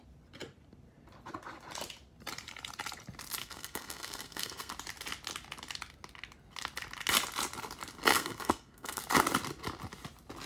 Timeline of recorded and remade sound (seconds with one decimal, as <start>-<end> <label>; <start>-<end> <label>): 0.0-3.4 recorded; 3.4-4.7 remade; 4.7-8.1 recorded; 8.1-9.0 remade; 9.0-10.5 recorded